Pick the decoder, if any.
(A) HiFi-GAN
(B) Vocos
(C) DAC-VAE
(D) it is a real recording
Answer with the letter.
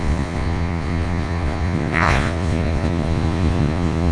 B